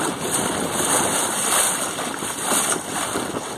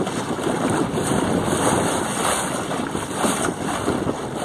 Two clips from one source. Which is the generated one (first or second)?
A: first